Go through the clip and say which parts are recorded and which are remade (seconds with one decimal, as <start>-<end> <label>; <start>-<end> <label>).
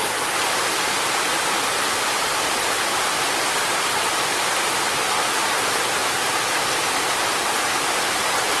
0.0-8.6 recorded